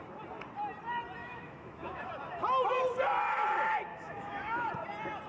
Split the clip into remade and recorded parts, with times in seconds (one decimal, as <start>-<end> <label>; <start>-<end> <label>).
0.0-1.2 recorded; 1.2-2.1 remade; 2.1-3.9 recorded; 3.9-4.7 remade; 4.7-5.3 recorded